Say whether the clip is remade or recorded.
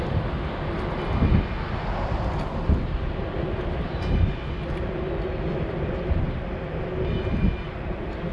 recorded